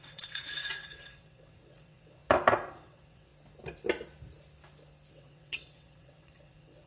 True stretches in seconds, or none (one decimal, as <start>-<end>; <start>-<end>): 2.2-2.7; 3.3-5.1